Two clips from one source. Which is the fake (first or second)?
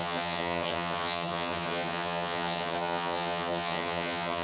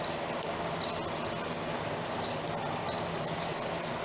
first